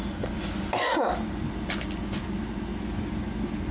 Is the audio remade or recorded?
recorded